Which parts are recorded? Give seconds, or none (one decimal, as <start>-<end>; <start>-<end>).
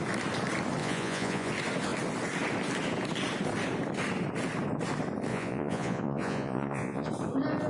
0.0-0.8; 1.5-5.3; 7.1-7.7